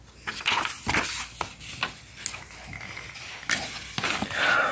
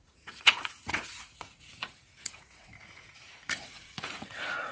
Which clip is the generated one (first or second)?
second